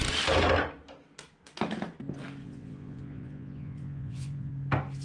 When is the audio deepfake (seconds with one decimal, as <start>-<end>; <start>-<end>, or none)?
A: 2.4-4.5